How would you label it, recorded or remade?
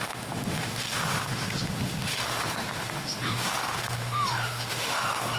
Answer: remade